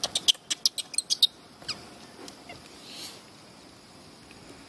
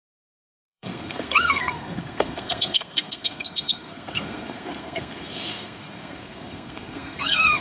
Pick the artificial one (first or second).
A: second